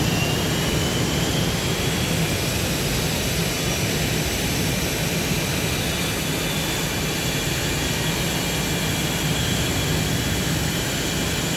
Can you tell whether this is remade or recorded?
recorded